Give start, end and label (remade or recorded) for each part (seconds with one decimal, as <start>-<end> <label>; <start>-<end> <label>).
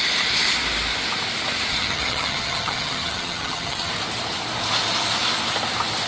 0.0-1.7 recorded; 1.7-3.9 remade; 3.9-6.1 recorded